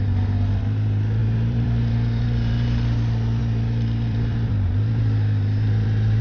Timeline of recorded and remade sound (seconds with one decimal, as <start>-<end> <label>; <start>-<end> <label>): 0.0-1.2 recorded; 1.2-2.5 remade; 2.5-3.4 recorded; 3.4-6.2 remade